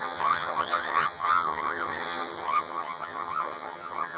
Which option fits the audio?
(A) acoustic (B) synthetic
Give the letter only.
B